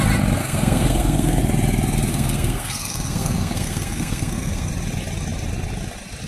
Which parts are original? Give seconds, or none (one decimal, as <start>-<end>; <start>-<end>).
0.0-0.4; 1.4-2.1; 4.7-6.3